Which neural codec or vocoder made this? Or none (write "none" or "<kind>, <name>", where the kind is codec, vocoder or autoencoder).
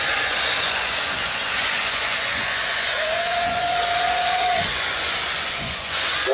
vocoder, Vocos